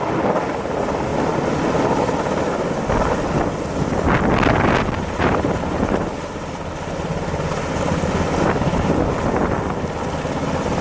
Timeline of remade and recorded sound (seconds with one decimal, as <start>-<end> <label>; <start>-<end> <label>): 0.0-10.8 recorded

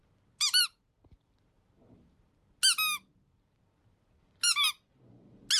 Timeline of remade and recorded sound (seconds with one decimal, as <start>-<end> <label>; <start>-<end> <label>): 0.0-5.6 recorded

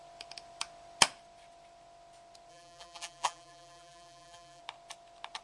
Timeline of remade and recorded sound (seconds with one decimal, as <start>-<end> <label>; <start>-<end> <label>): 0.0-2.5 recorded; 2.5-4.6 remade; 4.6-5.4 recorded

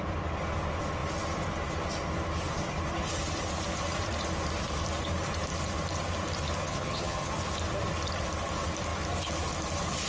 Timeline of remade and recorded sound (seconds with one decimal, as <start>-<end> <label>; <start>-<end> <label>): 0.0-6.6 recorded; 6.6-7.3 remade; 7.3-10.1 recorded

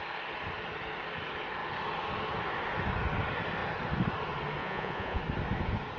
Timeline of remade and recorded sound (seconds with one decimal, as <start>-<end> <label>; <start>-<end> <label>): 0.0-4.6 recorded; 4.6-5.2 remade; 5.2-6.0 recorded

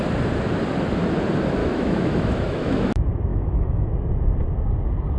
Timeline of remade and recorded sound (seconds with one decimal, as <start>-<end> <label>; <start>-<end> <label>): 0.0-1.6 recorded; 1.6-2.9 remade; 2.9-3.3 recorded; 3.3-3.9 remade; 3.9-5.2 recorded

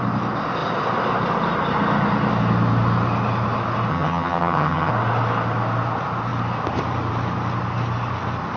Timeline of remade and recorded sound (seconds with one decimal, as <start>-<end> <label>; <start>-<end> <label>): 0.0-3.9 recorded; 3.9-4.9 remade; 4.9-8.6 recorded

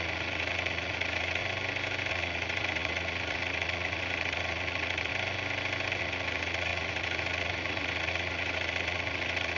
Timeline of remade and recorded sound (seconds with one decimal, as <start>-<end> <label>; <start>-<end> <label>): 0.0-1.4 remade; 1.4-2.1 recorded; 2.1-5.1 remade; 5.1-6.0 recorded; 6.0-9.6 remade